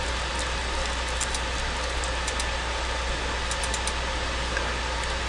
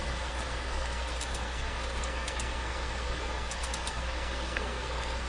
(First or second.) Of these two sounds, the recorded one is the first